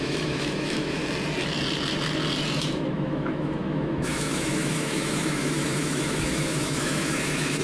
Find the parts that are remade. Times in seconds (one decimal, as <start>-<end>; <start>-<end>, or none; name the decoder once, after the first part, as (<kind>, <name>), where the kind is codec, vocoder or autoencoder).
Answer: 0.0-1.0 (autoencoder, DAC-VAE); 2.6-7.6

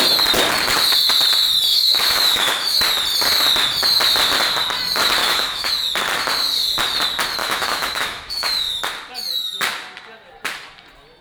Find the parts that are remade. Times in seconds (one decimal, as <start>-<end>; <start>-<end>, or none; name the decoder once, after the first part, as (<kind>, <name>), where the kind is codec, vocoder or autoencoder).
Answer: 1.7-2.8 (autoencoder, DAC-VAE); 5.2-5.7; 7.4-8.8